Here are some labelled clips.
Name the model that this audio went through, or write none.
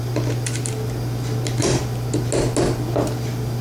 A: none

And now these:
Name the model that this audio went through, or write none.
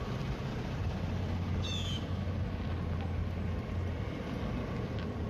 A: none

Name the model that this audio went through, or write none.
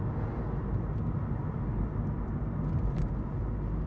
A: none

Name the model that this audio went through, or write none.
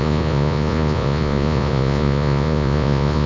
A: vocoder, Vocos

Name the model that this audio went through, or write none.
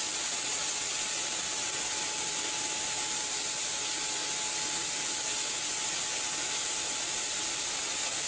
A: none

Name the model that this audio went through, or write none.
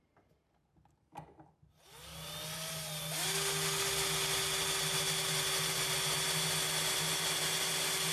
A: none